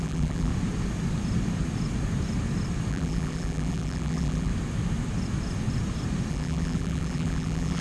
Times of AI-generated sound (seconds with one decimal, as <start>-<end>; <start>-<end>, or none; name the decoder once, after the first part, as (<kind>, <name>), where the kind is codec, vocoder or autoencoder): 0.0-0.5 (vocoder, BigVGAN v2); 2.9-4.5; 6.3-7.8